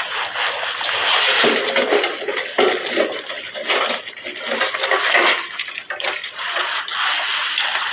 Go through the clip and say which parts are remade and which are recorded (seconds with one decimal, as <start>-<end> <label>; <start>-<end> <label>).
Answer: 0.0-6.2 recorded; 6.2-6.8 remade; 6.8-7.9 recorded